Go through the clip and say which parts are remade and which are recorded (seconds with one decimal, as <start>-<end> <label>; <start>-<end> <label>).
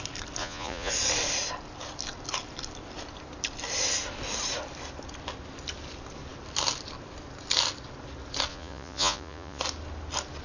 0.0-0.4 recorded; 0.4-0.9 remade; 0.9-8.5 recorded; 8.5-9.6 remade; 9.6-10.4 recorded